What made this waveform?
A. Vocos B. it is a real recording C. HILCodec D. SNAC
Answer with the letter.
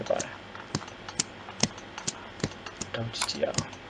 B